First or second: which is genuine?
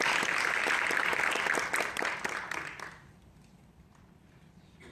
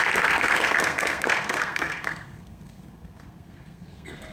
first